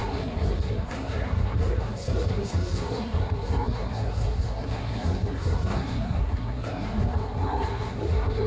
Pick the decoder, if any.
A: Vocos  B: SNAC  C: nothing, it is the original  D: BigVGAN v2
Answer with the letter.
B